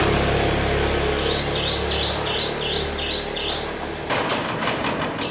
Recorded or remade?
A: recorded